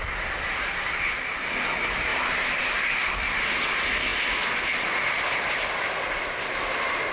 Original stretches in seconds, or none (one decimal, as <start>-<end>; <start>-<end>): 0.0-7.1